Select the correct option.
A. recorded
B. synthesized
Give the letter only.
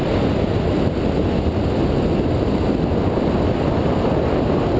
A